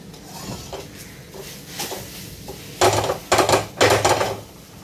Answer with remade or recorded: recorded